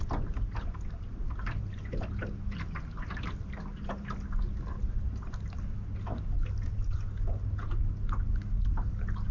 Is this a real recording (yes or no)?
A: yes